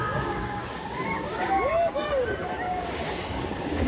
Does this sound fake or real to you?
fake